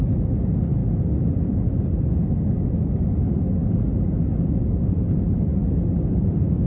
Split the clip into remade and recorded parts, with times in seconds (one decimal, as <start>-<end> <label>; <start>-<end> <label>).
0.0-6.7 recorded